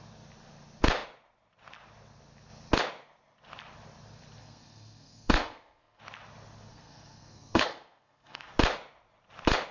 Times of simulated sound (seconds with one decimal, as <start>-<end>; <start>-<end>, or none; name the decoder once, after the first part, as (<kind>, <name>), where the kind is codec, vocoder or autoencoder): 4.4-6.0 (codec, SNAC); 6.7-8.5